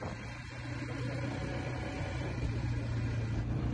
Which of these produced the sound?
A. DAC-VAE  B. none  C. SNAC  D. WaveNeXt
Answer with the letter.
B